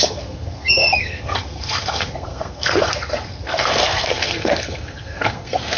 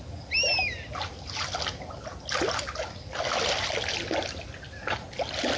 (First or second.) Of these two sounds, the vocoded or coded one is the first